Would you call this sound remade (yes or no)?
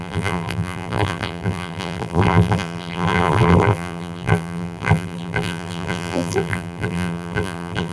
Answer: yes